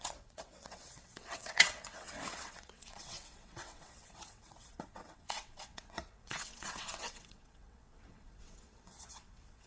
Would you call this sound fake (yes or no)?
yes